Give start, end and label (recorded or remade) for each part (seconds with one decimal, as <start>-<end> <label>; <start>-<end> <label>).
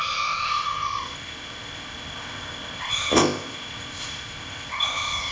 0.0-5.3 remade